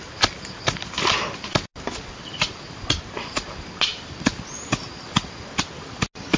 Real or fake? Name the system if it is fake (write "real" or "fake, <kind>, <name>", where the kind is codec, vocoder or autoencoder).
real